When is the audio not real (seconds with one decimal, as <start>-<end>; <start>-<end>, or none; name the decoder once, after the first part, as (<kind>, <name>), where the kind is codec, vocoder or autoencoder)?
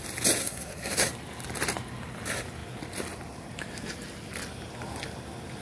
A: 0.4-1.1 (codec, SNAC)